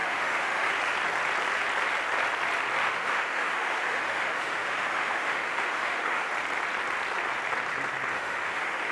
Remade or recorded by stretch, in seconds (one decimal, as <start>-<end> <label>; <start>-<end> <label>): 0.0-0.7 remade; 0.7-2.8 recorded; 2.8-6.3 remade; 6.3-8.1 recorded; 8.1-8.9 remade